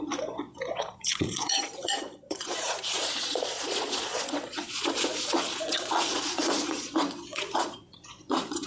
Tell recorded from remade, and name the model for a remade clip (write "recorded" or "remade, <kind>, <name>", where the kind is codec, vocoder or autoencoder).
remade, vocoder, Vocos